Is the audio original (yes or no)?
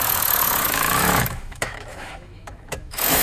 no